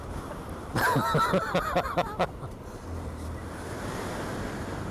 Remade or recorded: recorded